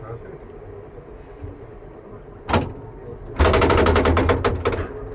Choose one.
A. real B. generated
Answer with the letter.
A